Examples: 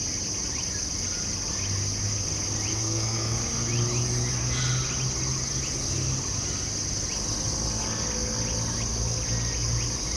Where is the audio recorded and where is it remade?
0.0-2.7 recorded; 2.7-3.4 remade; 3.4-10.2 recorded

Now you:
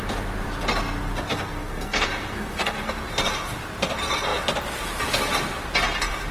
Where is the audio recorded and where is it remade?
0.0-1.3 recorded; 1.3-2.9 remade; 2.9-6.3 recorded